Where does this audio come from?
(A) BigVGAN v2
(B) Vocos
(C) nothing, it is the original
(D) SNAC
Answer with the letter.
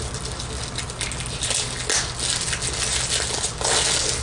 C